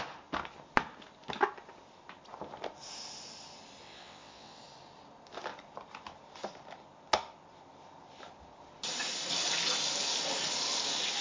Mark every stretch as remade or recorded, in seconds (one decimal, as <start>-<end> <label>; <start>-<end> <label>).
0.0-3.8 recorded; 3.8-4.6 remade; 4.6-11.2 recorded